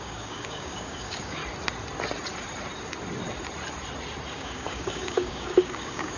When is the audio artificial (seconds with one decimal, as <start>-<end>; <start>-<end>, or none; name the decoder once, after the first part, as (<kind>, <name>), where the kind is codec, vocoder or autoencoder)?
0.0-1.4 (codec, DAC); 4.3-6.2